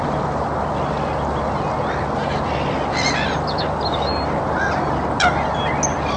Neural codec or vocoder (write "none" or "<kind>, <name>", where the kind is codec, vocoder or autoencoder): none